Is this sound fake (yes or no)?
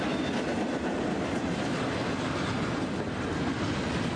no